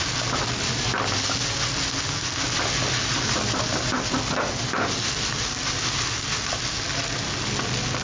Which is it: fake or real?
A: real